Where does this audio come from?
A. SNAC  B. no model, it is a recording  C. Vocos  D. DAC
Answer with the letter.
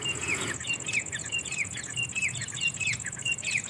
C